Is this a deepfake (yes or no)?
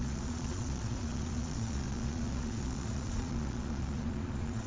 yes